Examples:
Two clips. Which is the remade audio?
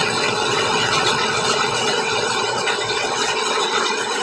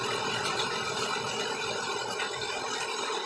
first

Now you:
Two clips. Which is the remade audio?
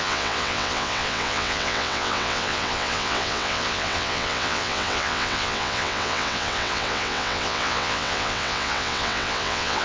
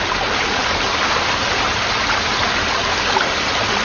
first